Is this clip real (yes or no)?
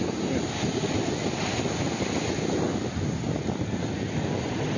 yes